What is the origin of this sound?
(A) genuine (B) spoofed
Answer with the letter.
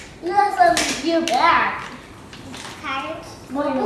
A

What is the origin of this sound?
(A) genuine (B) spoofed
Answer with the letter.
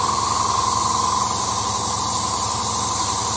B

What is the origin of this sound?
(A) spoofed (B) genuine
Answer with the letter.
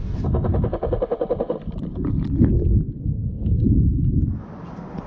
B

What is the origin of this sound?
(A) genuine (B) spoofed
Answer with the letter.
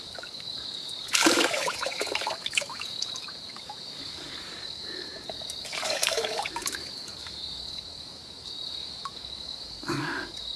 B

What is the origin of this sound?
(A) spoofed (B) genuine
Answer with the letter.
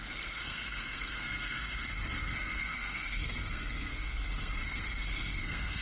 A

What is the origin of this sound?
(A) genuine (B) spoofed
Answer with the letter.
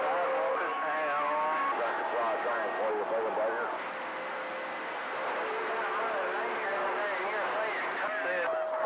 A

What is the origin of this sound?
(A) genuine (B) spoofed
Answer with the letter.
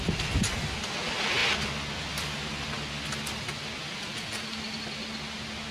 A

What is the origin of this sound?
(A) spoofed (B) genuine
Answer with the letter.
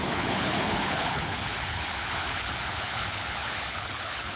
A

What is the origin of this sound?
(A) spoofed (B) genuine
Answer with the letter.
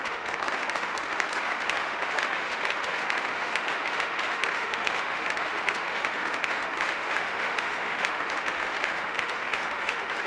A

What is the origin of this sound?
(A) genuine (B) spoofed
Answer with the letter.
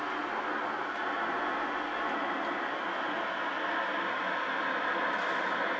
A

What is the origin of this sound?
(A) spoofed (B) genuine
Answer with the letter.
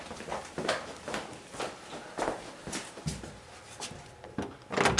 B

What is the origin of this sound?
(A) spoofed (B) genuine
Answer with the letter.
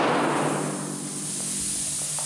B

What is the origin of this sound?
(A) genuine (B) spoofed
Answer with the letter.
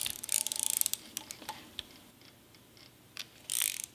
A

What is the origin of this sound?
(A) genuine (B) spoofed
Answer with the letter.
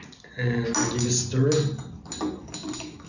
A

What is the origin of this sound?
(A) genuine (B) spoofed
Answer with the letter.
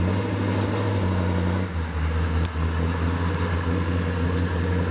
A